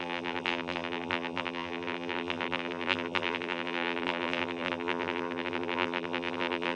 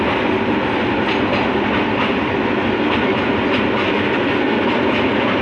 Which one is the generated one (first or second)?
first